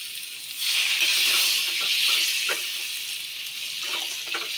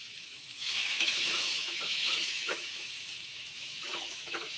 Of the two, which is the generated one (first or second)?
second